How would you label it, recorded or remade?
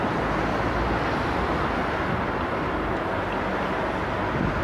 recorded